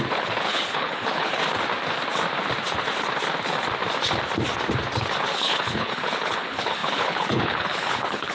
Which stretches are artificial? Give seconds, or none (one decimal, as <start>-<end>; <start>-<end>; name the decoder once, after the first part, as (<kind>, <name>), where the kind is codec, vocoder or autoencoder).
0.0-1.4 (codec, HILCodec); 5.2-8.3